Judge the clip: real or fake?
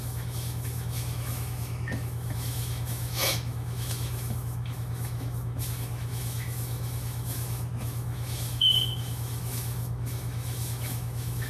fake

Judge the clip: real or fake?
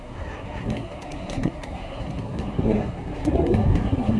fake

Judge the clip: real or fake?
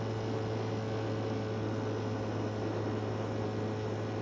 real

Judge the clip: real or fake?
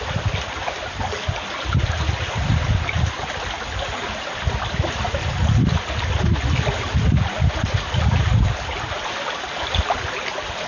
real